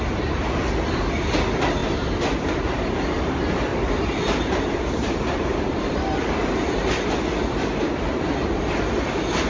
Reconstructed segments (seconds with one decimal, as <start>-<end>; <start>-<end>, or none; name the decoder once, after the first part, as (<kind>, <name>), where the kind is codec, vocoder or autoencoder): 1.8-2.5 (vocoder, BigVGAN v2); 3.7-6.0